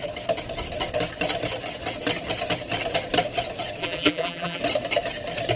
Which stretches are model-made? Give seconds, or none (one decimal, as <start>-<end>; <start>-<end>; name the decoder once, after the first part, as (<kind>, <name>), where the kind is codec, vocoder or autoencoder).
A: 3.8-4.6 (vocoder, BigVGAN v2)